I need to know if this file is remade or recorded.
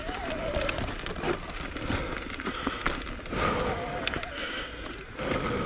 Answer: recorded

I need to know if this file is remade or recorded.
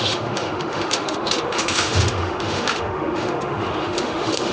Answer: remade